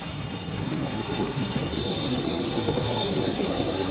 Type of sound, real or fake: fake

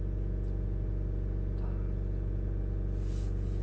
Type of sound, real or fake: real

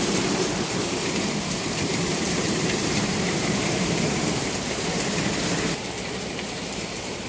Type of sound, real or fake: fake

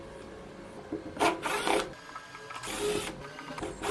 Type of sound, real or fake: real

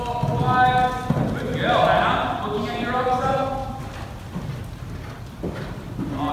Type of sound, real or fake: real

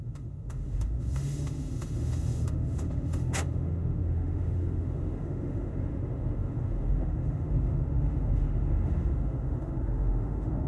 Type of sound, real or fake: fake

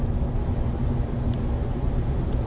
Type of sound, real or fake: real